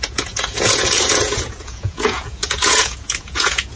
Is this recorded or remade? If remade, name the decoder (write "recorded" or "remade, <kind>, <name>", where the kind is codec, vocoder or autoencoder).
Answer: remade, vocoder, Vocos